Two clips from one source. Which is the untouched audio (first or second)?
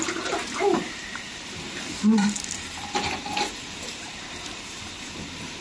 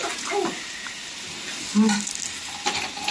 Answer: second